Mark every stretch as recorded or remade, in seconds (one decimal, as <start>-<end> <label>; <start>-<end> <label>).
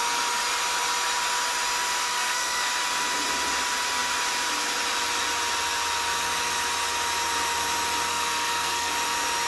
0.0-2.0 recorded; 2.0-2.7 remade; 2.7-8.1 recorded; 8.1-8.9 remade; 8.9-9.5 recorded